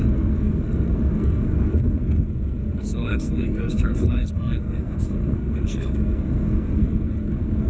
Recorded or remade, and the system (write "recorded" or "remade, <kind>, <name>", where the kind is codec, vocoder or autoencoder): remade, codec, SNAC